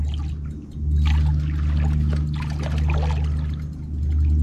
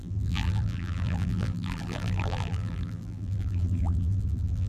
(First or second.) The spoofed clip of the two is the second